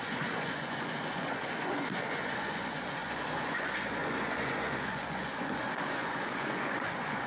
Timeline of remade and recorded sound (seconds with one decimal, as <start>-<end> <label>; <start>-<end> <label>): 0.0-7.3 remade